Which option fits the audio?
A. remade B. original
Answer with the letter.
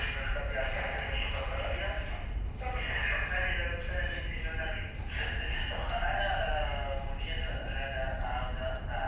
B